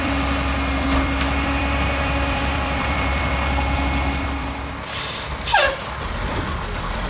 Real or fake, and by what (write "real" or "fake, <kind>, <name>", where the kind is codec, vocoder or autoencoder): fake, vocoder, BigVGAN v2